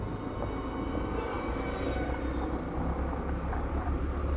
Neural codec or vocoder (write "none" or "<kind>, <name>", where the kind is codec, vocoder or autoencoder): none